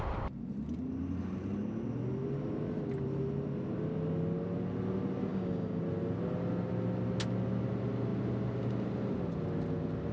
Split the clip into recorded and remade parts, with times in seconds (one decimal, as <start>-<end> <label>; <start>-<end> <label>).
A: 0.0-5.3 recorded; 5.3-5.8 remade; 5.8-10.1 recorded